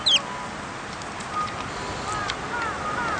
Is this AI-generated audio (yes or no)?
no